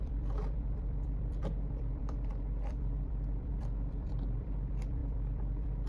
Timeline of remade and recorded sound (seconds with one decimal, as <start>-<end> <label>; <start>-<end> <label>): 0.0-5.9 remade